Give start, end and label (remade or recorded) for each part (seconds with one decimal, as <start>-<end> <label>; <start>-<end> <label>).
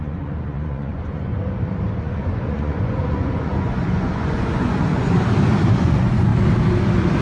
0.0-1.3 remade; 1.3-2.0 recorded; 2.0-5.1 remade; 5.1-5.8 recorded; 5.8-6.3 remade; 6.3-7.2 recorded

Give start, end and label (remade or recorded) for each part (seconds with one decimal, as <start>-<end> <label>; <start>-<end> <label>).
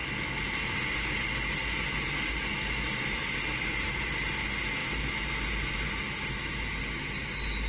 0.0-7.7 recorded